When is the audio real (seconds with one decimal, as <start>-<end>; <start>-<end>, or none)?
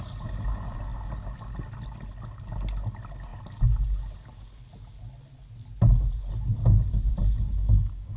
0.0-7.6